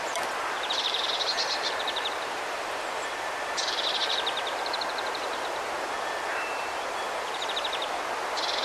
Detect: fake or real fake